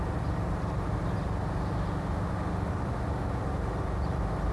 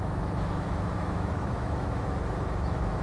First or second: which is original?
first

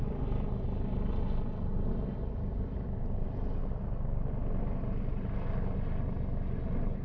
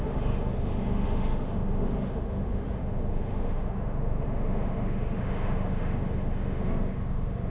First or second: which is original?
first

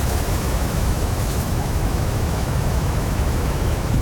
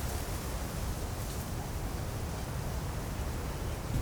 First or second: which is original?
second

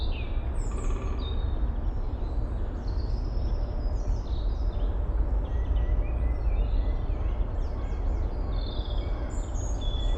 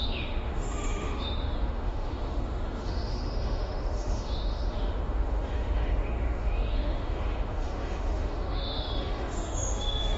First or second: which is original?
first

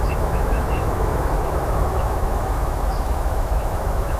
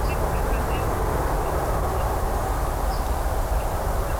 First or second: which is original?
second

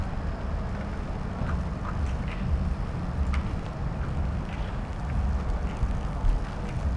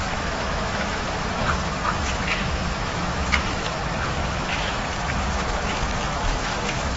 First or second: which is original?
first